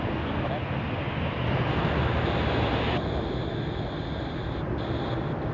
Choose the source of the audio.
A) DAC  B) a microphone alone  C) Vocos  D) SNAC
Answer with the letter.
B